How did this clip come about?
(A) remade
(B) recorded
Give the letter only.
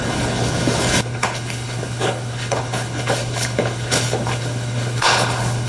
A